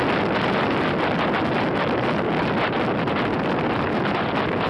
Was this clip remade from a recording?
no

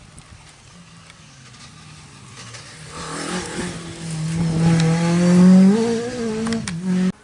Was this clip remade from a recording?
no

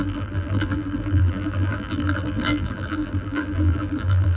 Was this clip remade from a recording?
yes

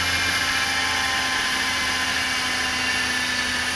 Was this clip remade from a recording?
no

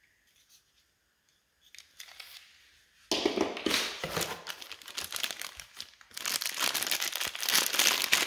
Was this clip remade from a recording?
no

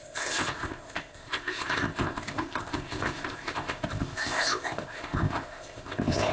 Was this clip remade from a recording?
yes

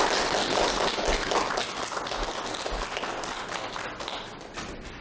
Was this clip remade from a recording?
no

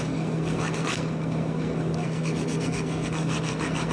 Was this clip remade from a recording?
yes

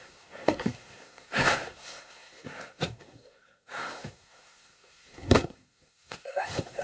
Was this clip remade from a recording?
yes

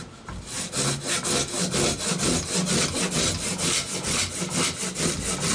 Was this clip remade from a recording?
no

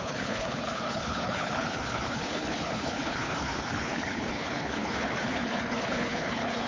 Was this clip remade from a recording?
yes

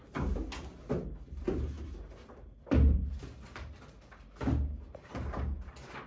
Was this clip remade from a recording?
no